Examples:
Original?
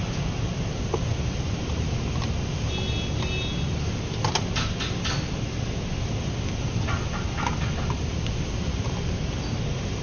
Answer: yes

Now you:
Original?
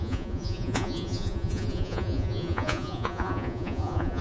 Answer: no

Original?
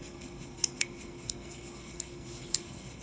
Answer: no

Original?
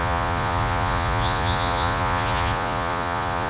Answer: no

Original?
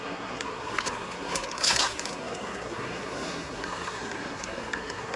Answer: no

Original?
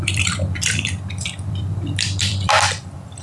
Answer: no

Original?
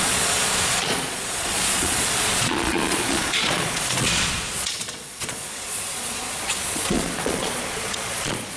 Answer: no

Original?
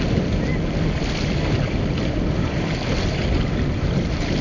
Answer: yes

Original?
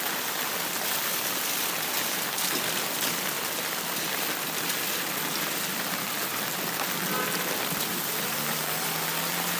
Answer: yes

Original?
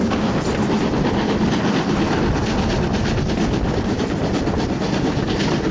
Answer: yes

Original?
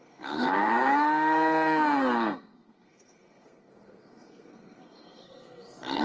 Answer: no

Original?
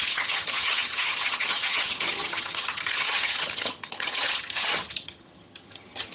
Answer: no